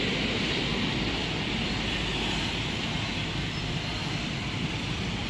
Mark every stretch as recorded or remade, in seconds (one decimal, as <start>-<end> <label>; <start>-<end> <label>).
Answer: 0.0-5.3 recorded